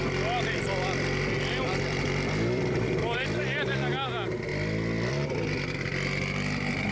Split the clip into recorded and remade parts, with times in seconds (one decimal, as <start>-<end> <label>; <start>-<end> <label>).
0.0-3.9 remade; 3.9-6.9 recorded